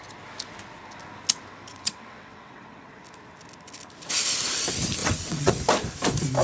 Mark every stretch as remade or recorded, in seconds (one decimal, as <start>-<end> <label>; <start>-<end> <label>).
0.0-1.7 recorded; 1.7-3.0 remade; 3.0-5.0 recorded; 5.0-5.5 remade; 5.5-6.4 recorded